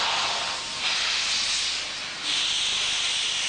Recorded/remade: recorded